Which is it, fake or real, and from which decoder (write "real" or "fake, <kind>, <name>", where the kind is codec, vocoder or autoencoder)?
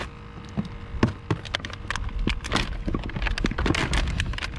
real